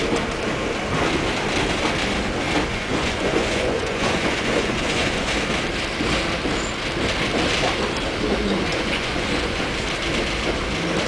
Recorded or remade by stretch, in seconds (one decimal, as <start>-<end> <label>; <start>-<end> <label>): 0.0-2.7 recorded; 2.7-5.3 remade; 5.3-8.7 recorded; 8.7-9.6 remade; 9.6-11.1 recorded